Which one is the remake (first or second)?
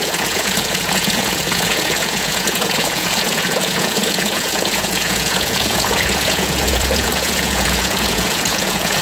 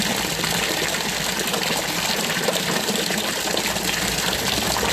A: first